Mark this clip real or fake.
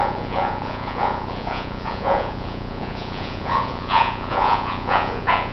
fake